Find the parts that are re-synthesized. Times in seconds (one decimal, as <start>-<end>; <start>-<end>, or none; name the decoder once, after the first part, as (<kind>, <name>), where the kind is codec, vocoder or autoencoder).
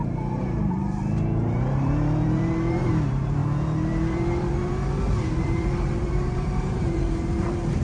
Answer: 0.0-7.8 (vocoder, BigVGAN v2)